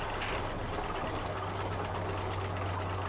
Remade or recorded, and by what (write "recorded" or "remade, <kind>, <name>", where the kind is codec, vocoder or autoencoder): recorded